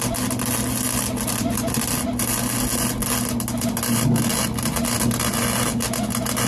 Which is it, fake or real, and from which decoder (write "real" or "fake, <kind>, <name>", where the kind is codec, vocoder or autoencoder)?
real